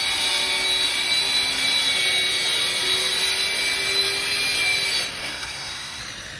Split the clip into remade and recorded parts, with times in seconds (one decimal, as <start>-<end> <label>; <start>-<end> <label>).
0.0-5.2 recorded; 5.2-6.0 remade; 6.0-6.4 recorded